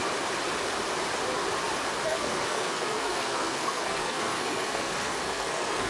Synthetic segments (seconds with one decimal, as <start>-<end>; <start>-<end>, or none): 2.1-5.9